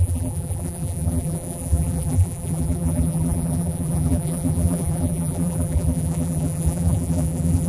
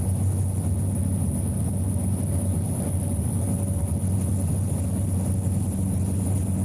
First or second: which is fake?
first